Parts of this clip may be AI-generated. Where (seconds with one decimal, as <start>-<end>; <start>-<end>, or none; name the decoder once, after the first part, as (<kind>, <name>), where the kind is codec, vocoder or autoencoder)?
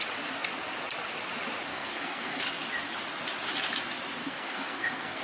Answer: 1.7-2.4 (codec, SNAC); 4.2-5.2